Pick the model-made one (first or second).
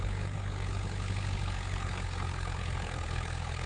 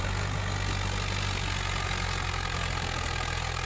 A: first